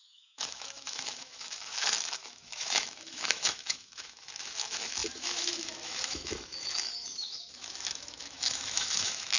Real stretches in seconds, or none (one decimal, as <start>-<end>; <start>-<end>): none